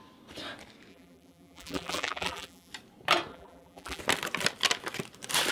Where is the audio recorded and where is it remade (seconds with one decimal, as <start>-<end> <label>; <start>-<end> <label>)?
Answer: 0.0-0.9 recorded; 0.9-2.7 remade; 2.7-3.3 recorded; 3.3-4.0 remade; 4.0-5.5 recorded